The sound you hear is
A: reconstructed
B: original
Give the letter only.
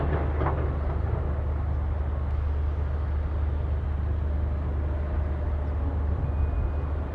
B